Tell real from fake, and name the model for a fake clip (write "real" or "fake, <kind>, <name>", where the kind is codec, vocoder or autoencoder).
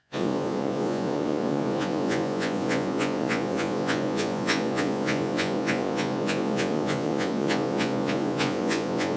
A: fake, vocoder, Vocos